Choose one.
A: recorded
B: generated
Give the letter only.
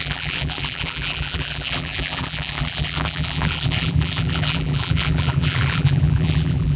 B